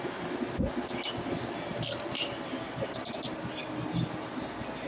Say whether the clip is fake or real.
real